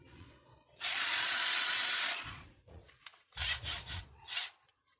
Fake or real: fake